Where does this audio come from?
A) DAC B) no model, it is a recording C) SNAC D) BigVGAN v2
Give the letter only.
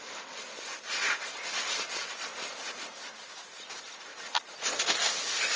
B